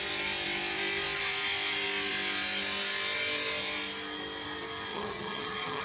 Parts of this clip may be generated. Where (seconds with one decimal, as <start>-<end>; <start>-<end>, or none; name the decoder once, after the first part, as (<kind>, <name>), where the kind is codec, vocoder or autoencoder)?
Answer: 4.9-5.8 (vocoder, HiFi-GAN)